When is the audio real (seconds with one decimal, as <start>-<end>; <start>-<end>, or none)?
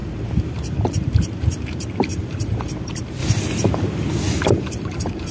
0.0-0.5; 3.2-4.5